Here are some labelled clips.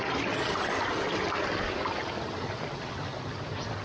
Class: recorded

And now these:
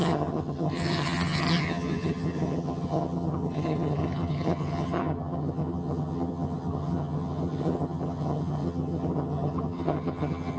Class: remade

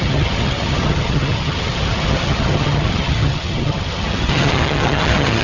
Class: remade